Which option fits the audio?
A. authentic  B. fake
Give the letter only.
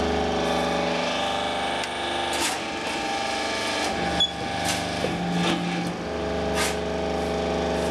A